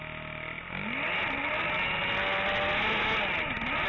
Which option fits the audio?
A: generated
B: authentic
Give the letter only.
B